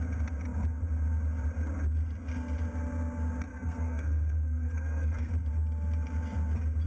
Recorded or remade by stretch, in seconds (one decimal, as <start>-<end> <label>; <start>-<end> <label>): 0.0-3.5 recorded; 3.5-5.3 remade; 5.3-6.9 recorded